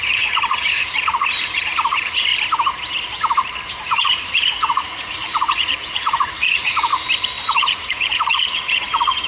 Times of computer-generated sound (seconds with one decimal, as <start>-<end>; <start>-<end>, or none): 0.0-2.3; 3.8-6.9; 7.4-9.3